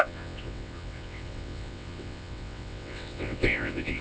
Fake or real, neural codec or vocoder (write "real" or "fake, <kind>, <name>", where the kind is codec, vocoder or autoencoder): fake, vocoder, WaveNeXt